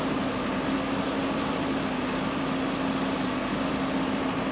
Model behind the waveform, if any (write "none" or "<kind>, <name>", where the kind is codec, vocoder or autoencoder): none